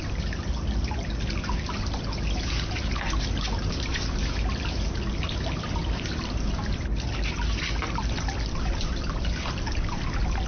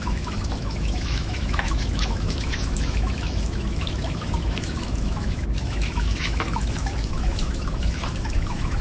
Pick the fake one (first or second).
second